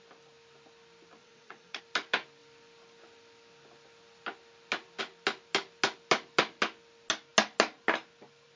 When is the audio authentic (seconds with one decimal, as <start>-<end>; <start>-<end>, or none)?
0.0-1.2; 1.8-8.6